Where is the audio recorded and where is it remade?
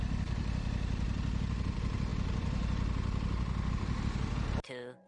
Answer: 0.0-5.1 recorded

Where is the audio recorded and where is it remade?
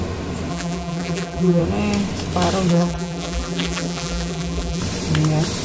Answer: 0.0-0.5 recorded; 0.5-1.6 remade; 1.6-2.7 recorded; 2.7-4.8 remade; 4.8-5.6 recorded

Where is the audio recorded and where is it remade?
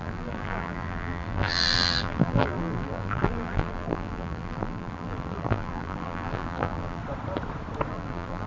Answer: 0.0-7.0 remade; 7.0-7.9 recorded; 7.9-8.5 remade